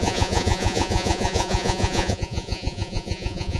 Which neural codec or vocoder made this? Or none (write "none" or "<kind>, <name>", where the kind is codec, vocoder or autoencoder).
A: vocoder, Vocos